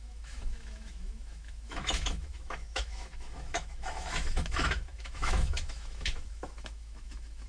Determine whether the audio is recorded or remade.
remade